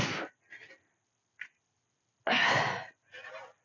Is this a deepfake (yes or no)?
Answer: no